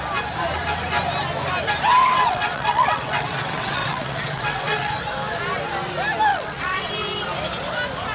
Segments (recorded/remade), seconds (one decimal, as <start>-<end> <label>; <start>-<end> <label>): 0.0-2.0 recorded; 2.0-5.0 remade; 5.0-6.3 recorded; 6.3-6.9 remade; 6.9-8.1 recorded